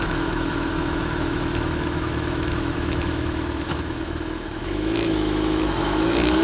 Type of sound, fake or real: fake